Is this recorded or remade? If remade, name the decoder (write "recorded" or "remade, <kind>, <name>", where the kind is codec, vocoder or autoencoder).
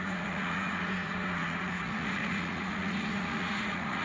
remade, vocoder, Vocos